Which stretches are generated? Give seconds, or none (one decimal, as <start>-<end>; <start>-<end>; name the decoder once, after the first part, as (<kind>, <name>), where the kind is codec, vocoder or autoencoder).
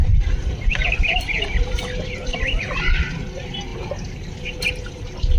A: 0.5-2.2 (vocoder, BigVGAN v2); 2.7-3.7; 4.7-5.4